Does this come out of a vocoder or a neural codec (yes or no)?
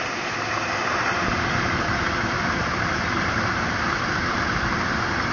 yes